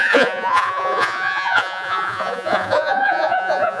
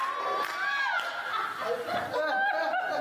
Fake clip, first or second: first